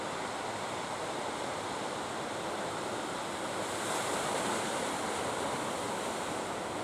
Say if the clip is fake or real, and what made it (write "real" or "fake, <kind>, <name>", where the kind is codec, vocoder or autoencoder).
real